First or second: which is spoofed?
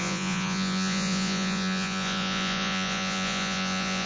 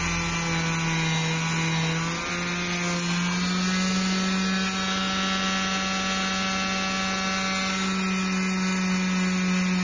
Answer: first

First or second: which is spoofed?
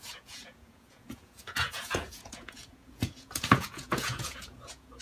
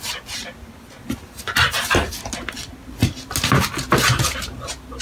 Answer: first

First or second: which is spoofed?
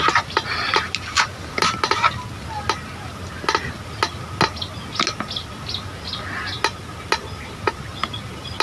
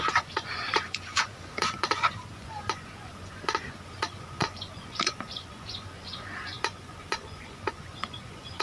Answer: second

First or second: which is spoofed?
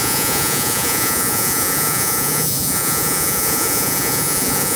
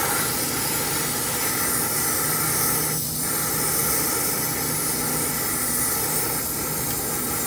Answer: first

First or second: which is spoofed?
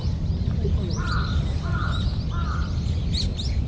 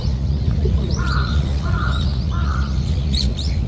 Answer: second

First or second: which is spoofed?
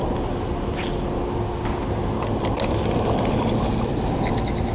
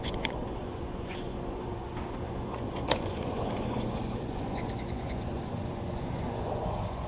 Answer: second